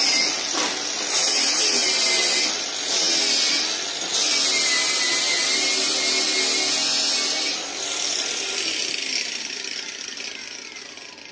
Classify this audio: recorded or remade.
recorded